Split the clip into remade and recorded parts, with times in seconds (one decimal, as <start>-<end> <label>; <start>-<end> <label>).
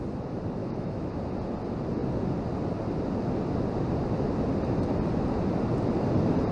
0.0-0.6 recorded; 0.6-1.2 remade; 1.2-6.5 recorded